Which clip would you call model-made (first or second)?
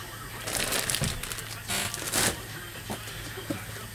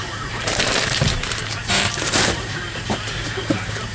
second